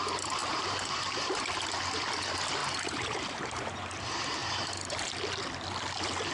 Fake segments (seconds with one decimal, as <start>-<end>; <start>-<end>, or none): 0.4-1.4; 2.6-4.0; 4.4-5.1